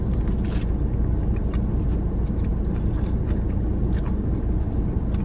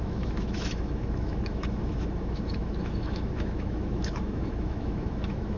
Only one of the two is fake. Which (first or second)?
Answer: second